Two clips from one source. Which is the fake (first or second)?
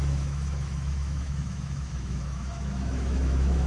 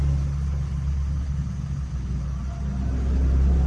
first